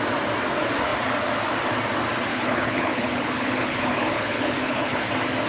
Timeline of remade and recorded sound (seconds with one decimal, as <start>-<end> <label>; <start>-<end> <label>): 0.0-2.3 recorded; 2.3-5.1 remade; 5.1-5.5 recorded